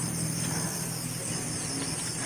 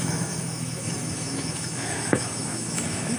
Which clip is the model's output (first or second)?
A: second